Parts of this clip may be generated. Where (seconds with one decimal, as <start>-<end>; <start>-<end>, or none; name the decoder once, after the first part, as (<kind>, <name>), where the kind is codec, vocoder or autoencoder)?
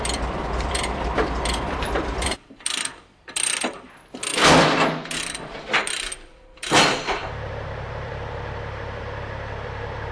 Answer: 0.0-10.1 (vocoder, BigVGAN v2)